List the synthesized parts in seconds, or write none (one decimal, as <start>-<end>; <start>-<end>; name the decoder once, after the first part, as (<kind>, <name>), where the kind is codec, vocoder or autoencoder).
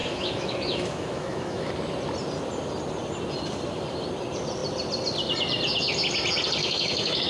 0.0-1.7 (autoencoder, DAC-VAE); 6.6-7.3